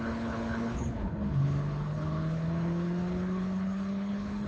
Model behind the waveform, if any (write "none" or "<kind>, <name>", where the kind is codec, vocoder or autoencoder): codec, HILCodec